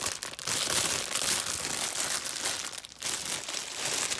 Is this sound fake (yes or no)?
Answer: no